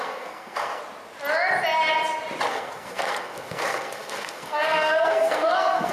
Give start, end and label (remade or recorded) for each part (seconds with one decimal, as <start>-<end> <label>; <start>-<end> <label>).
0.0-0.8 remade; 0.8-2.5 recorded; 2.5-5.9 remade